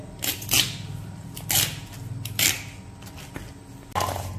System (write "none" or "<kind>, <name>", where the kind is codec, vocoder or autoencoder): none